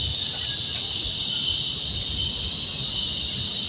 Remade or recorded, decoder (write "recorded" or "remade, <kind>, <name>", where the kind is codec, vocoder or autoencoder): recorded